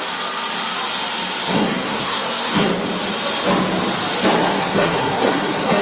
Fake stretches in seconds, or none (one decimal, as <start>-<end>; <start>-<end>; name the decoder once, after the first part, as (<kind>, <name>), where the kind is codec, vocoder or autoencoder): 1.5-2.7 (codec, SNAC); 4.4-5.8